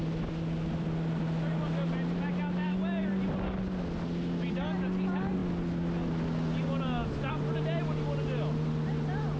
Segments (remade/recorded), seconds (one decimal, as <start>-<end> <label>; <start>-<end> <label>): 0.0-9.4 recorded